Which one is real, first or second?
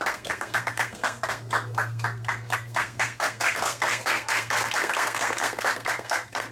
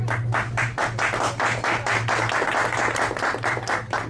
second